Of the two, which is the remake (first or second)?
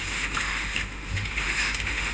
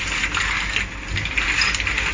first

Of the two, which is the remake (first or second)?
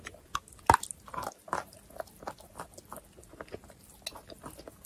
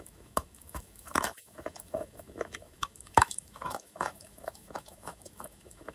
second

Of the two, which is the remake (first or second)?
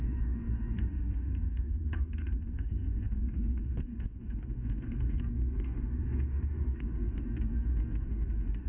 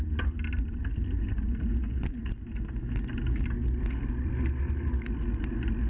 first